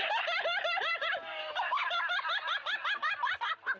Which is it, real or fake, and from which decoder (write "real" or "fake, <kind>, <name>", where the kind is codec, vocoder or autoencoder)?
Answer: real